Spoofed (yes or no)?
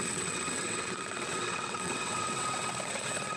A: yes